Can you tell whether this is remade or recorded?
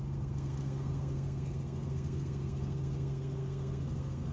remade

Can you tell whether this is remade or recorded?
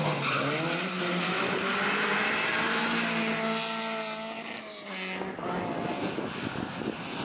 recorded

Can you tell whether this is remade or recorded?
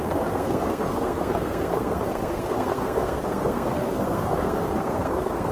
remade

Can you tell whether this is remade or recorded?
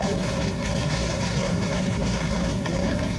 remade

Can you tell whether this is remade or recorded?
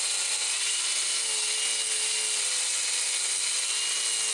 recorded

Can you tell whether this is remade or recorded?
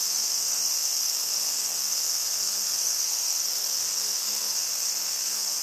remade